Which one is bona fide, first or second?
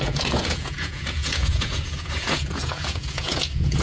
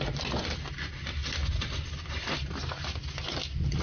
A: second